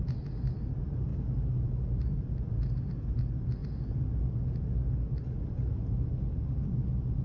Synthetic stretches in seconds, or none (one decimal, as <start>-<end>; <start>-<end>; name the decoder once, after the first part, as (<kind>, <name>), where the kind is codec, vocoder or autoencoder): 1.1-1.7 (vocoder, BigVGAN v2)